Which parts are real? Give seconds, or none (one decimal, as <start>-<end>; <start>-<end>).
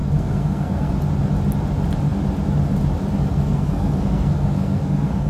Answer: 0.9-3.3